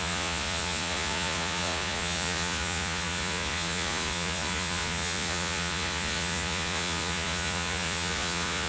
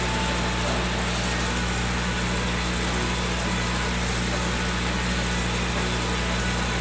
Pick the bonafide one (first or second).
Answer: second